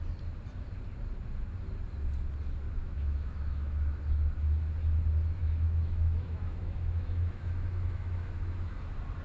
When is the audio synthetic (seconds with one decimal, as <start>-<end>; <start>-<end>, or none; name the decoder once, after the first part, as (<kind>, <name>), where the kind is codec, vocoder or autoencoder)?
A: 2.8-4.0 (autoencoder, DAC-VAE); 5.4-8.7